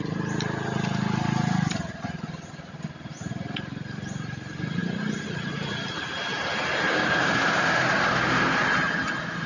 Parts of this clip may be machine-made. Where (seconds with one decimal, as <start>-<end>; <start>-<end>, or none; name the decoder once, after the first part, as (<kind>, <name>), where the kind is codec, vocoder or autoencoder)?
none